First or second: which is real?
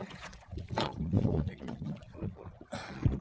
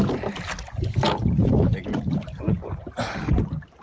second